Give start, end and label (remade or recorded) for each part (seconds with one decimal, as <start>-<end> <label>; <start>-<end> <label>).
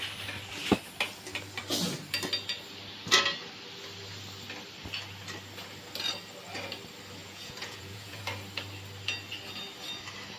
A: 0.0-7.2 recorded; 7.2-8.2 remade; 8.2-10.4 recorded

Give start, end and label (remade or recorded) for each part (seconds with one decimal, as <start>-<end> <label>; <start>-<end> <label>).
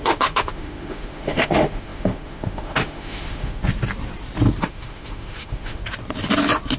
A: 0.0-3.6 remade; 3.6-4.6 recorded; 4.6-5.8 remade; 5.8-6.8 recorded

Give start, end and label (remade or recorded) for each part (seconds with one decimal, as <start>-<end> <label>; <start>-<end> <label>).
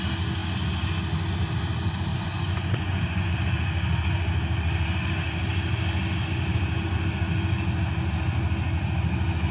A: 0.0-2.1 recorded; 2.1-3.3 remade; 3.3-9.5 recorded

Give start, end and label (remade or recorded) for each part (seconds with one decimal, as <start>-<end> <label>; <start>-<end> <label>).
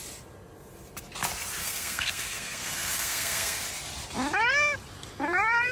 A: 0.0-1.6 recorded; 1.6-3.6 remade; 3.6-5.7 recorded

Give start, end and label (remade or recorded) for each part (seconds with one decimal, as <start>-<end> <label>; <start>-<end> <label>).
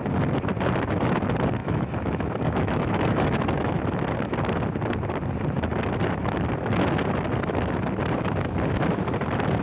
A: 0.0-1.6 recorded; 1.6-3.8 remade; 3.8-9.6 recorded